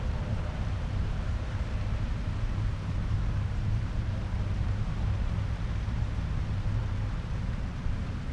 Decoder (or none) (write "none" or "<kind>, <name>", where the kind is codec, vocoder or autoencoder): vocoder, BigVGAN v2